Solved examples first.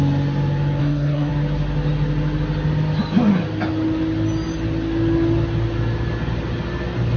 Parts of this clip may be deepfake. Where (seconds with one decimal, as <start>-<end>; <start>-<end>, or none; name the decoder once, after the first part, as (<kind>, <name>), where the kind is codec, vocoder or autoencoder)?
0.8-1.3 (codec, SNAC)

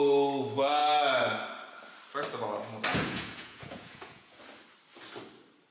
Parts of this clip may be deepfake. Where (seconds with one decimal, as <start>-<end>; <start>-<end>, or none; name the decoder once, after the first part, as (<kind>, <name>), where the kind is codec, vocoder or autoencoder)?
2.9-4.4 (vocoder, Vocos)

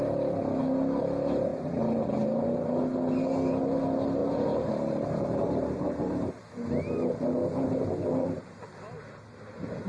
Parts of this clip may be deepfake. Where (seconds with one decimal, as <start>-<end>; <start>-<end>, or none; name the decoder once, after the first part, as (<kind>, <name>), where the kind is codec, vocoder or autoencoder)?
4.2-8.8 (vocoder, BigVGAN v2)

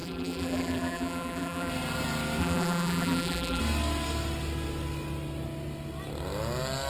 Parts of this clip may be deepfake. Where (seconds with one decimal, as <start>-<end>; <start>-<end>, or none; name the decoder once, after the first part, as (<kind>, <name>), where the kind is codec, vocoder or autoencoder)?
0.0-1.7 (vocoder, BigVGAN v2); 2.4-3.6

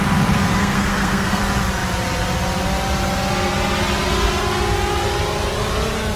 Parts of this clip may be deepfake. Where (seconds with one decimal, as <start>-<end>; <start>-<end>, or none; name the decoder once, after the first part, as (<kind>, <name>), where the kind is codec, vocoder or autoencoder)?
0.6-1.4 (codec, SNAC)

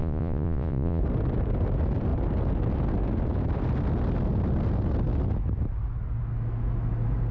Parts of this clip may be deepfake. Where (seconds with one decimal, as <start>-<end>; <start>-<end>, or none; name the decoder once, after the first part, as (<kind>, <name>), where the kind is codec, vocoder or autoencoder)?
0.0-1.0 (vocoder, Vocos)

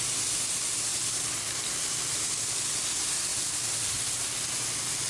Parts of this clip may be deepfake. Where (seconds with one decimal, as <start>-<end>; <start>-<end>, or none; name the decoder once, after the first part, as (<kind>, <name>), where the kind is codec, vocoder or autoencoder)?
none